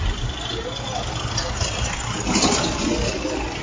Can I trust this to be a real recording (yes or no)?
yes